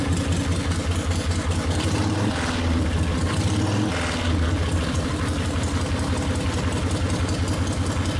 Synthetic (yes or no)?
no